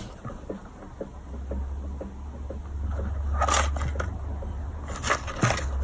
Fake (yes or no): no